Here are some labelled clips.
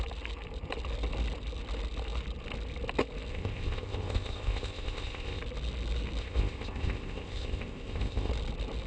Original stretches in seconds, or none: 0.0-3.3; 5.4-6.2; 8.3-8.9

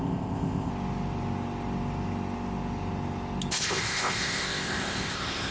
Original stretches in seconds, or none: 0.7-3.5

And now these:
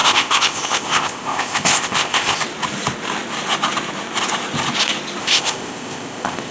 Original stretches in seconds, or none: 2.4-5.2